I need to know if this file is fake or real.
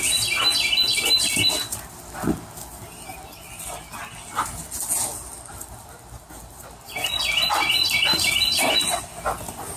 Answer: real